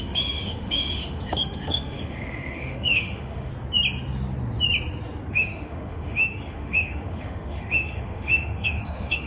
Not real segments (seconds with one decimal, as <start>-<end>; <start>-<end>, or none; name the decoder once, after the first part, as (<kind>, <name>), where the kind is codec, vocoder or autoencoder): 0.0-3.5 (autoencoder, DAC-VAE); 5.3-9.3